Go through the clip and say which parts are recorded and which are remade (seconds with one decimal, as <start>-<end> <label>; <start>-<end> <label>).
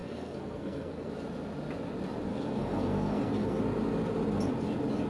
0.0-1.1 remade; 1.1-2.3 recorded; 2.3-3.6 remade; 3.6-5.1 recorded